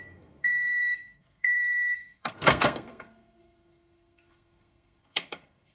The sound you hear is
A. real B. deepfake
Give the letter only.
B